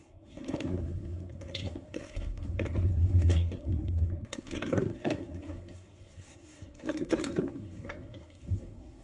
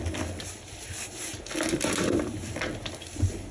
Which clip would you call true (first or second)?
second